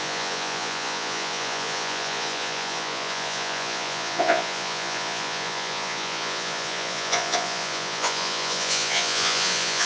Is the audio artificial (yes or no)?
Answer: yes